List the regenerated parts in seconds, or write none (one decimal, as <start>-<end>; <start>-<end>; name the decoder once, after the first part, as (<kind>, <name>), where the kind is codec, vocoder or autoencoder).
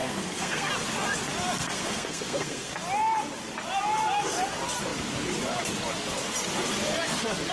0.0-0.7 (codec, SNAC); 1.6-2.7